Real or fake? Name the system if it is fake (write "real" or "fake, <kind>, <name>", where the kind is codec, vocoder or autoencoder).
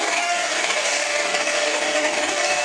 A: fake, codec, DAC